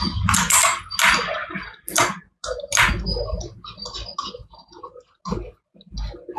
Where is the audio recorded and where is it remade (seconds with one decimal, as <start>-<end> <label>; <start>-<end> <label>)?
0.0-6.4 recorded